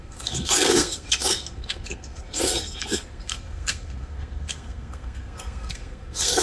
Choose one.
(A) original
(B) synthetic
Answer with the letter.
B